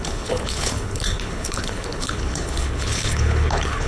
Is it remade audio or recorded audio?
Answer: remade